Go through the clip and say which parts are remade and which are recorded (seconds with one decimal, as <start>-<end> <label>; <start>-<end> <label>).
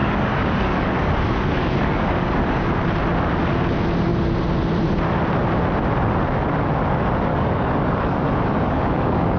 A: 0.0-2.7 remade; 2.7-7.3 recorded; 7.3-9.4 remade